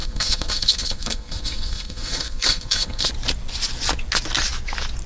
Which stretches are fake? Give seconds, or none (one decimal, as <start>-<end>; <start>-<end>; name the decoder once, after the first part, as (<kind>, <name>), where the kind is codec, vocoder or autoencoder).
0.0-3.1 (codec, SNAC)